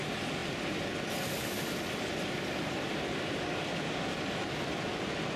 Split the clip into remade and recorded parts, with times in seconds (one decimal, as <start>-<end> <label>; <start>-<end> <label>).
0.0-5.4 recorded